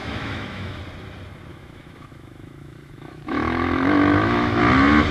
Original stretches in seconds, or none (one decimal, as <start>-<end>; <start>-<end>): 0.8-1.5; 4.6-5.1